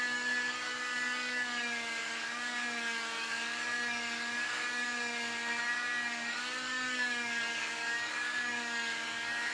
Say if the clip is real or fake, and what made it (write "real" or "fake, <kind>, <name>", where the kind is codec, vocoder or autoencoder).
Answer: fake, codec, DAC